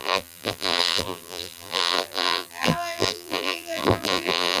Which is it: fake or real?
fake